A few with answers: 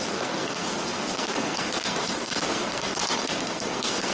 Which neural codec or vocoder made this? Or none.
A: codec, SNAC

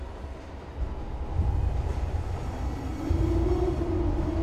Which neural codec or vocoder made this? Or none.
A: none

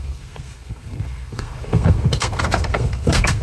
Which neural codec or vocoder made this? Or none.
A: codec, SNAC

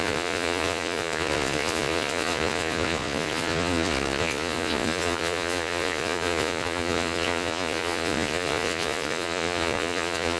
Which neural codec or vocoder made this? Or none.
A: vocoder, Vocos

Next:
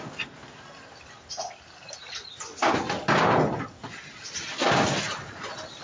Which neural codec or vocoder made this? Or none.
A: none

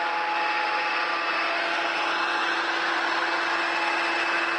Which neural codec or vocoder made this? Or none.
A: none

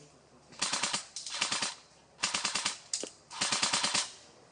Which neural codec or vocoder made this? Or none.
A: none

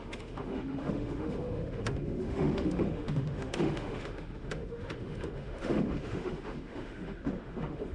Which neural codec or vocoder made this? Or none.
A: autoencoder, DAC-VAE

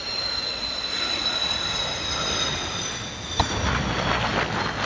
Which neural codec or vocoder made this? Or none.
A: none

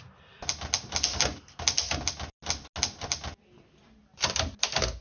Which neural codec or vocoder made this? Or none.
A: none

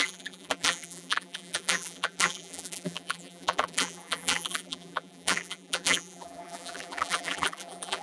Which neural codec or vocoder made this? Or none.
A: vocoder, BigVGAN v2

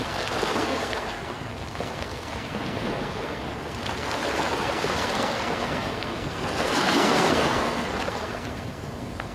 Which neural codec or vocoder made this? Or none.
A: codec, SNAC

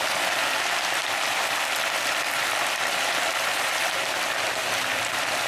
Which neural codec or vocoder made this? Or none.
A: vocoder, BigVGAN v2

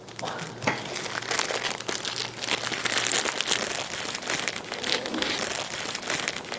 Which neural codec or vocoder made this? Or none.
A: none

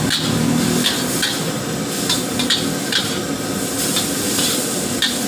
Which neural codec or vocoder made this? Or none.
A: none